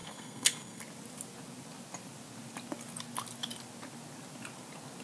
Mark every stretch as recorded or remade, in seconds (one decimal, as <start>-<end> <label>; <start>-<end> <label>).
0.0-0.8 remade; 0.8-5.0 recorded